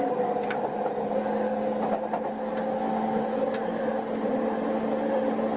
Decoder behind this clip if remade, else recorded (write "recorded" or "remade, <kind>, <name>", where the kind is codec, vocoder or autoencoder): recorded